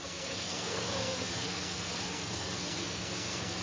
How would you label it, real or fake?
fake